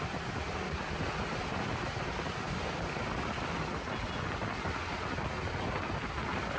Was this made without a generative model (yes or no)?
yes